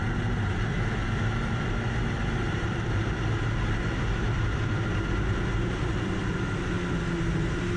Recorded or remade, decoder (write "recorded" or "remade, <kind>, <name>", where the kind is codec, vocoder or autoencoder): recorded